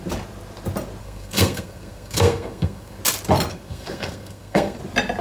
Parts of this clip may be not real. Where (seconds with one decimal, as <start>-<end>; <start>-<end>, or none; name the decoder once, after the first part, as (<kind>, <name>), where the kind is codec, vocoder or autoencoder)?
1.0-3.0 (codec, SNAC); 3.5-4.8